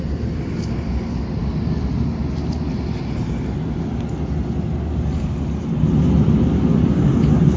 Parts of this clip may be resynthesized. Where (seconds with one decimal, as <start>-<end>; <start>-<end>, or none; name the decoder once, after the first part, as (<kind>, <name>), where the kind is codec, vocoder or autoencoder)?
none